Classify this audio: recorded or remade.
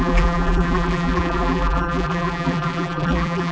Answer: remade